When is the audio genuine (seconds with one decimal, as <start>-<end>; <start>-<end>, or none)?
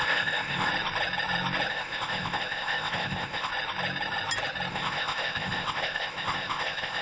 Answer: 0.7-1.7; 3.5-4.7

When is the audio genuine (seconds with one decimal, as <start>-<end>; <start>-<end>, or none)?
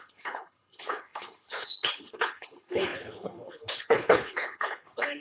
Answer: none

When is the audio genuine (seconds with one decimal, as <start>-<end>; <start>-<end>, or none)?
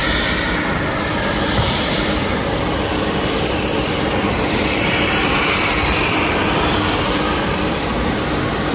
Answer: 7.9-8.7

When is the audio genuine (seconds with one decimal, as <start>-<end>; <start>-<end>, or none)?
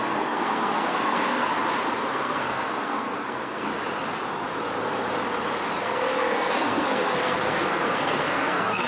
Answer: 1.5-2.1; 3.7-5.8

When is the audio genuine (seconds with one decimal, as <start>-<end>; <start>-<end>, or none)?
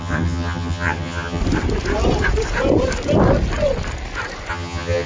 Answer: 1.4-4.5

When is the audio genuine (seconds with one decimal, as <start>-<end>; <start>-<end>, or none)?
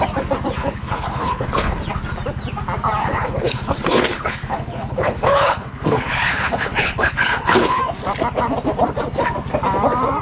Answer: 0.0-0.6; 1.8-3.0; 7.8-10.2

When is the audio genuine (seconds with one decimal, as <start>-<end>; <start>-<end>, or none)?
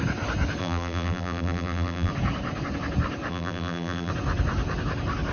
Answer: 0.0-0.6; 2.1-3.3; 4.1-5.3